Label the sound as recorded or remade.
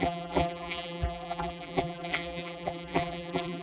remade